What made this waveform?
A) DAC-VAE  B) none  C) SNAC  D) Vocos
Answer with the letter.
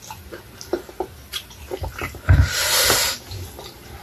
B